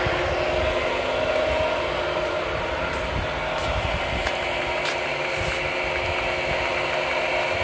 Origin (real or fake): real